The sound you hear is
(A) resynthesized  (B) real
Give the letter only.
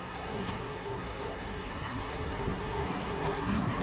A